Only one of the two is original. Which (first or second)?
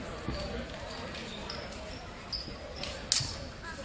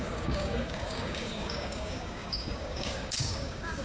first